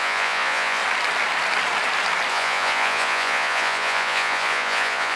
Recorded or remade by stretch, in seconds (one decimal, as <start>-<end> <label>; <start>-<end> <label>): 0.0-0.8 remade; 0.8-2.3 recorded; 2.3-5.2 remade